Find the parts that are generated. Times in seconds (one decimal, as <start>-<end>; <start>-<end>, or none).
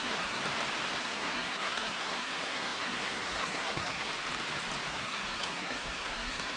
0.0-0.4; 1.0-4.1; 4.9-6.6